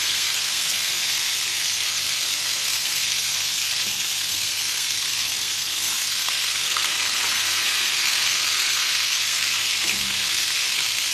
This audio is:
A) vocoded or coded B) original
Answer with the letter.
A